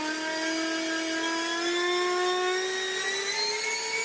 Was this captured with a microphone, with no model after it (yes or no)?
yes